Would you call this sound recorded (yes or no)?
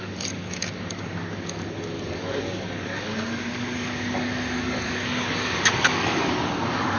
no